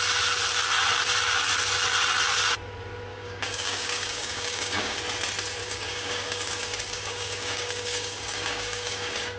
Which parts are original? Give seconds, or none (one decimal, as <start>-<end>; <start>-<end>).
0.0-3.1; 5.0-5.6